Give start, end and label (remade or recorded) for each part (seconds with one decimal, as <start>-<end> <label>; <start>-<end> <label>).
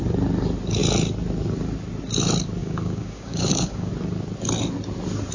0.0-2.6 recorded; 2.6-3.9 remade; 3.9-5.3 recorded